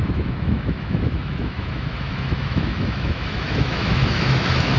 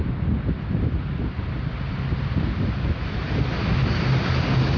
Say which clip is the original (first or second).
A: second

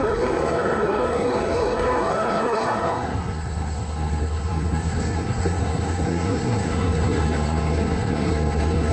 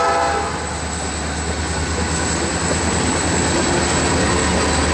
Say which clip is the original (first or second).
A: second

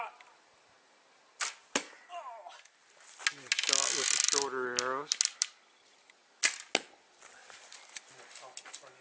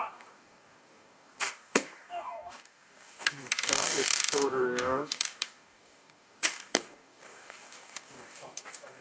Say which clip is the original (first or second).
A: first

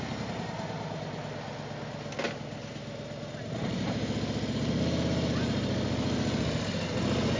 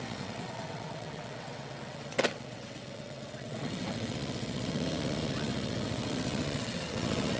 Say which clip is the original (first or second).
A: first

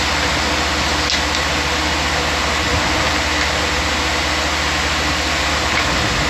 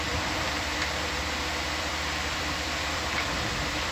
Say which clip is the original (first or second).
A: first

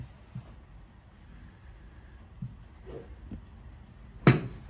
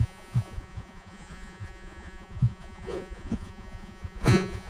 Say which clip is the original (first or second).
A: first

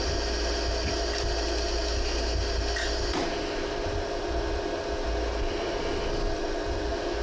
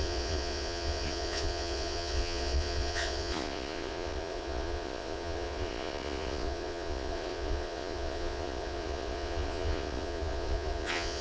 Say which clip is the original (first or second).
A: first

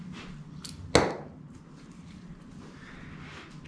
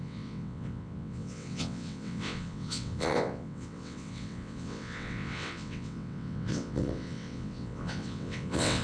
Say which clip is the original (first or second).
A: first